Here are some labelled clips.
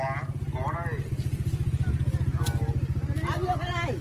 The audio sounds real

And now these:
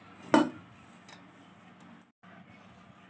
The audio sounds real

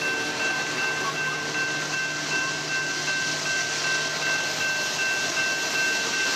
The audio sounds real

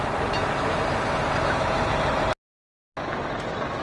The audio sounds real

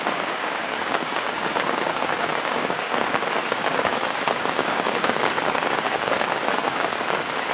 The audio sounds fake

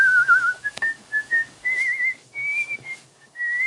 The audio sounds fake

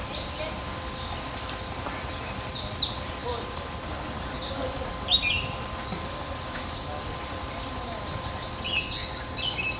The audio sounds real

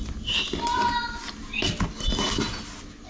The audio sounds real